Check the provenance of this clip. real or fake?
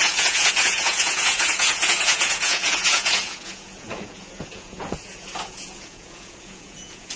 fake